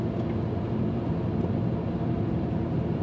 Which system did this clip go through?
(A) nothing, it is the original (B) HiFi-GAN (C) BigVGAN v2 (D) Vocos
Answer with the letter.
A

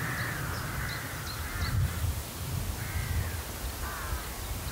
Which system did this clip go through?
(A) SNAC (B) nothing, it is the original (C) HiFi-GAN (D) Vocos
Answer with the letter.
B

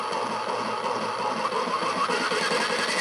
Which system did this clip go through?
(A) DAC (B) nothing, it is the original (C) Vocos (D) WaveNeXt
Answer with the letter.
B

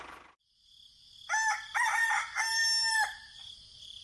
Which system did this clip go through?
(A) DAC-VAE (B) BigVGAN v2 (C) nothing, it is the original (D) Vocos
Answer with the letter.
C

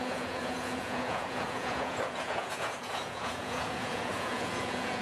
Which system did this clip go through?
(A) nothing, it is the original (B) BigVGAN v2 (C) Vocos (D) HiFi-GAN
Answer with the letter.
C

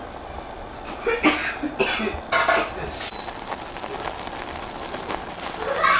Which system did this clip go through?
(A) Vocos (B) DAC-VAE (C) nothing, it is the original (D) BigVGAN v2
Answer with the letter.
C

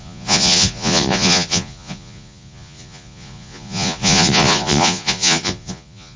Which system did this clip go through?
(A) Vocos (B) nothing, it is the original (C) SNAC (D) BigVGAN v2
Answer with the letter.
A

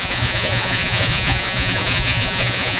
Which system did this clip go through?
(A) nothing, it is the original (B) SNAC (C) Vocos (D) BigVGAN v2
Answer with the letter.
C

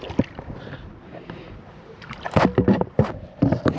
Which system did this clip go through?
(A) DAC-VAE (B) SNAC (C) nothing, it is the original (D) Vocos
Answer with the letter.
C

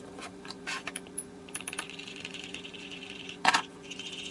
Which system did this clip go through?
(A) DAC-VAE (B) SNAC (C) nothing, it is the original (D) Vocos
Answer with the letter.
D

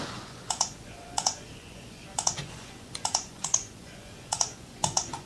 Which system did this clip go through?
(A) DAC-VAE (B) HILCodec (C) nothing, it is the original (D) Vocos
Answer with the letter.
D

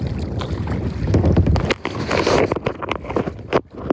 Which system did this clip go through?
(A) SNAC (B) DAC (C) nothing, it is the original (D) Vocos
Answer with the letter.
C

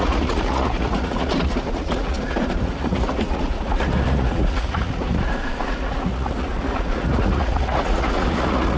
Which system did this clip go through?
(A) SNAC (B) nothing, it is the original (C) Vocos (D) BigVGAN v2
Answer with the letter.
C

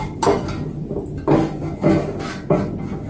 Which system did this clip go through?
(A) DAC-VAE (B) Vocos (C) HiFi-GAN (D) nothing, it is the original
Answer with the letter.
D